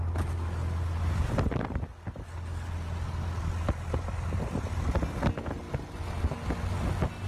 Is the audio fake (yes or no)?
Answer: no